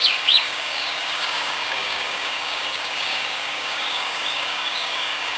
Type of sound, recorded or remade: remade